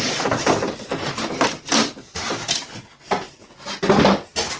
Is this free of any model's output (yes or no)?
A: yes